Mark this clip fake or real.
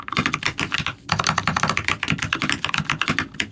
real